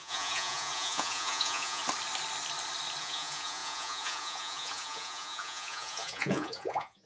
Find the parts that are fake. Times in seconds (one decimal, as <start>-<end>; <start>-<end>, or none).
0.0-1.8; 3.0-7.1